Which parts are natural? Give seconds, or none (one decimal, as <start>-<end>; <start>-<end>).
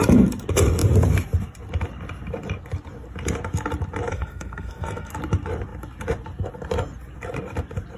0.0-4.1; 5.1-8.0